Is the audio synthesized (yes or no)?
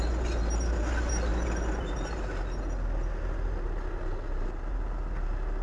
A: no